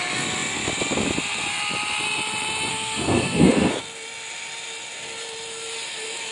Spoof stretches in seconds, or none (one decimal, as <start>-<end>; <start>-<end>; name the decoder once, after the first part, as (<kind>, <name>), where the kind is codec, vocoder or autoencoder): 2.7-3.8 (codec, SNAC)